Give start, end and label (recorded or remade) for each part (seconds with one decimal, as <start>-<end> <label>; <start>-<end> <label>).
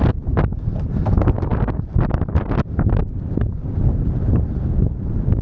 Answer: 0.0-5.4 recorded